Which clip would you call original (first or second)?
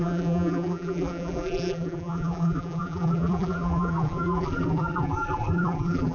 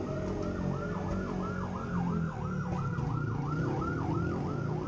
second